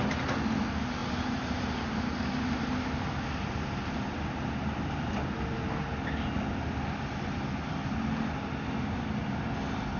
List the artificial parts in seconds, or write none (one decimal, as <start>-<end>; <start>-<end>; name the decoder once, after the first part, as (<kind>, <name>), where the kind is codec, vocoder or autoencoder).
none